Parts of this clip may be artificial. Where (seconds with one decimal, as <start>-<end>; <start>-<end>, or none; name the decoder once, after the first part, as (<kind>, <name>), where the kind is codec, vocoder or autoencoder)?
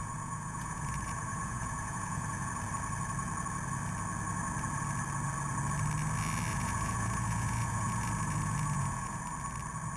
0.0-2.5 (vocoder, Vocos); 6.5-9.2